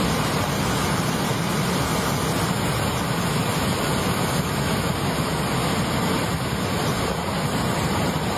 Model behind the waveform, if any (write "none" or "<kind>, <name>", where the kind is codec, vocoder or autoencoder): none